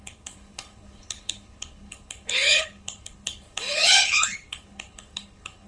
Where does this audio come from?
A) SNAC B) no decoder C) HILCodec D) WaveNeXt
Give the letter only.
C